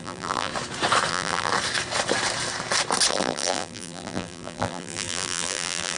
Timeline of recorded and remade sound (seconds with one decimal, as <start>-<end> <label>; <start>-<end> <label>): 0.0-0.5 remade; 0.5-1.1 recorded; 1.1-1.5 remade; 1.5-3.1 recorded; 3.1-6.0 remade